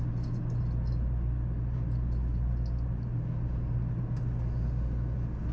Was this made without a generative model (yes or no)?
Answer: yes